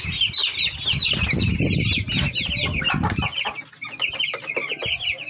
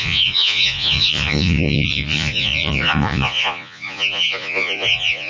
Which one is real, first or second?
first